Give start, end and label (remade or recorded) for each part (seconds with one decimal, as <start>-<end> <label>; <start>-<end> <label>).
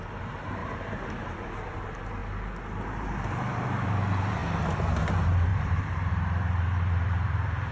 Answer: 0.0-2.2 remade; 2.2-2.8 recorded; 2.8-4.4 remade; 4.4-5.1 recorded; 5.1-7.7 remade